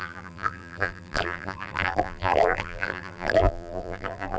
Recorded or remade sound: remade